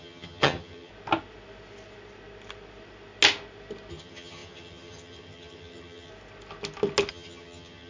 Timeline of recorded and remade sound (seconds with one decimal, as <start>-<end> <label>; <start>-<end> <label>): 0.0-0.9 remade; 0.9-3.9 recorded; 3.9-6.1 remade; 6.1-7.1 recorded; 7.1-7.9 remade